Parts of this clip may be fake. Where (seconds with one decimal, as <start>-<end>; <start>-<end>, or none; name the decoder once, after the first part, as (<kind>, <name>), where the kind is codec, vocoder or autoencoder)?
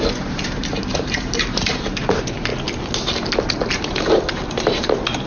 0.0-2.5 (vocoder, BigVGAN v2); 3.7-5.3